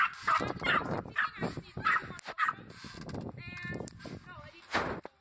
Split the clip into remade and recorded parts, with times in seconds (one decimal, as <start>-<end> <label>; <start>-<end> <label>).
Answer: 0.0-5.2 recorded